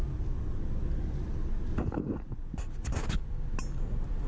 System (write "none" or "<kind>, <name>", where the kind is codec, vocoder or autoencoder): none